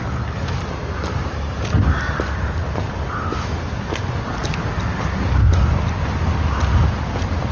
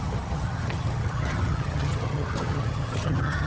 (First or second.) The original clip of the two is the first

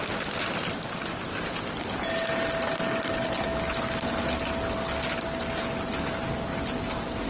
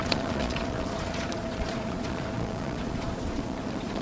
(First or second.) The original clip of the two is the first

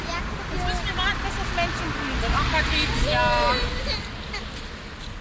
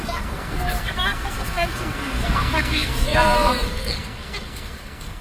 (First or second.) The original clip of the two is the first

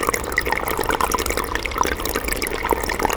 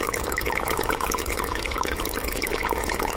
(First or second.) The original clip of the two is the first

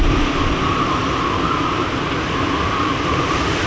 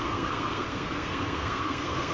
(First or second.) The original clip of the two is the first